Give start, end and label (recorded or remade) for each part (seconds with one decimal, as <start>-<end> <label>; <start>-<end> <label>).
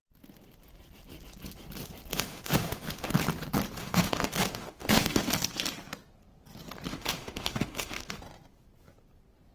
0.0-2.1 recorded; 2.1-3.1 remade; 3.1-3.8 recorded; 3.8-5.3 remade; 5.3-6.9 recorded; 6.9-8.1 remade; 8.1-9.5 recorded